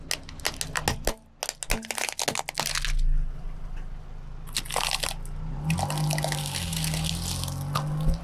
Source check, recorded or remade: recorded